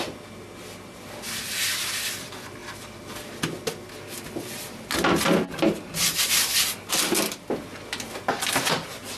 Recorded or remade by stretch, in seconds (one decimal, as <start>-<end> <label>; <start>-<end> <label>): 0.0-9.2 recorded